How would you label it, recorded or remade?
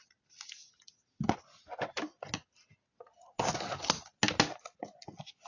recorded